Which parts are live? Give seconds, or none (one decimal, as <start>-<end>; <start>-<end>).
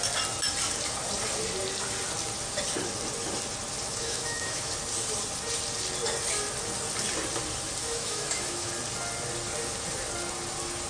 0.0-3.9; 4.7-7.8; 8.7-10.9